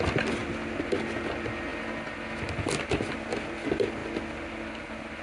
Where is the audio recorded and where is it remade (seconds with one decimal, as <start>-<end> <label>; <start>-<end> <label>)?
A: 0.0-5.2 recorded